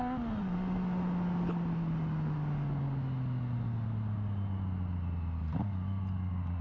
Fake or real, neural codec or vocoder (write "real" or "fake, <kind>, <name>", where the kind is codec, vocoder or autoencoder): real